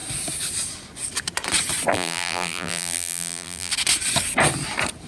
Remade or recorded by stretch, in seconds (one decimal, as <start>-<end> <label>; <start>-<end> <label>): 0.0-1.9 recorded; 1.9-3.7 remade; 3.7-5.1 recorded